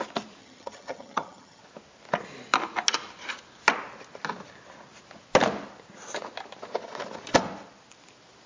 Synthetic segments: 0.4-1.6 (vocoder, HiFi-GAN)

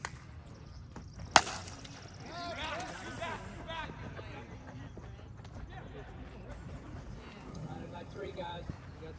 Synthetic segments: 7.5-8.7 (vocoder, HiFi-GAN)